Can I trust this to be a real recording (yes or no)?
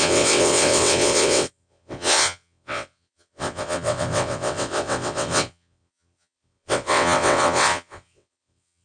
no